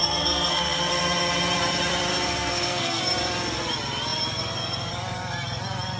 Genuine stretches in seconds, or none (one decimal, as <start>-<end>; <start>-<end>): 0.9-2.1; 3.0-6.0